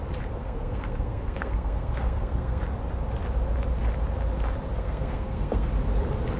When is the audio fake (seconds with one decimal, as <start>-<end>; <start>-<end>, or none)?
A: 0.4-2.6; 4.7-5.7